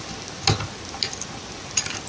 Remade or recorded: recorded